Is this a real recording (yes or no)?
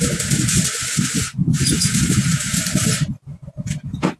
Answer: yes